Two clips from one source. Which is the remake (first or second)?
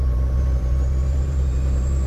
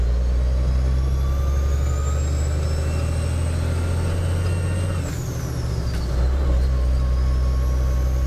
first